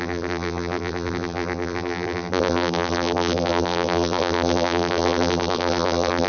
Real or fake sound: fake